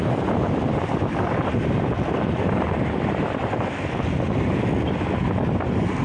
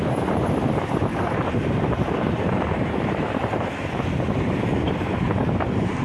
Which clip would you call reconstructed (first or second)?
second